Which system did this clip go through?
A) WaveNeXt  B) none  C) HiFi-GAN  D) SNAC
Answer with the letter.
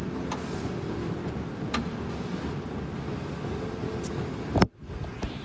B